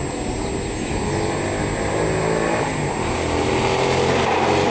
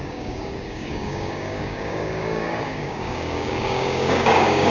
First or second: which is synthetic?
second